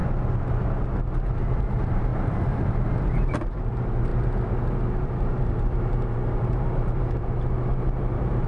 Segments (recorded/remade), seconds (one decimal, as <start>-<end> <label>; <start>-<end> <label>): 0.0-1.5 recorded; 1.5-2.1 remade; 2.1-3.3 recorded; 3.3-4.1 remade; 4.1-5.0 recorded; 5.0-8.5 remade